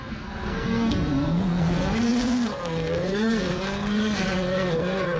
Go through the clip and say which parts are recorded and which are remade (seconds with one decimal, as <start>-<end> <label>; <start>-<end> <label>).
0.0-5.2 remade